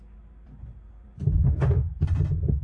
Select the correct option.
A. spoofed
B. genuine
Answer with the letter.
B